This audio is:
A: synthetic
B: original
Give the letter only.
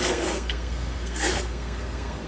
A